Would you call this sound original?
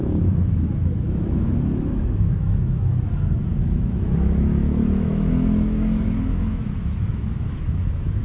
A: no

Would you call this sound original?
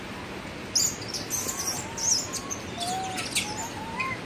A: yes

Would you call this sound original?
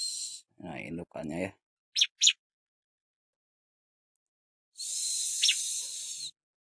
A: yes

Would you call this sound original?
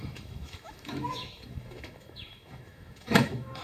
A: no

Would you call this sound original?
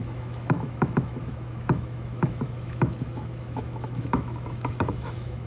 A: no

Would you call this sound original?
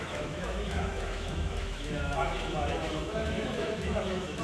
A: no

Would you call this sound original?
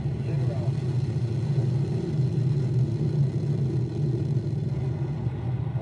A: yes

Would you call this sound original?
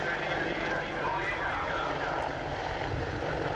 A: yes